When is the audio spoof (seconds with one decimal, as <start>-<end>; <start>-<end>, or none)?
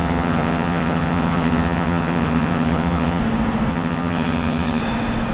0.0-3.2; 3.7-4.8